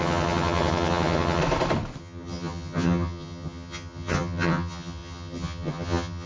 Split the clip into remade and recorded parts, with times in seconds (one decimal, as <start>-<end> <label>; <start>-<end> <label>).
0.0-1.4 remade; 1.4-2.0 recorded; 2.0-6.3 remade